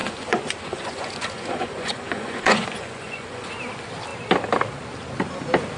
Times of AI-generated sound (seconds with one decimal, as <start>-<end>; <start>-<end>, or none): 0.0-3.5